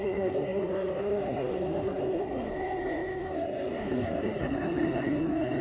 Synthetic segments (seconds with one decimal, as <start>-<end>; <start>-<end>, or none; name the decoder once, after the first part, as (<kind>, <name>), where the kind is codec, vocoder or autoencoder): 0.0-5.6 (codec, SNAC)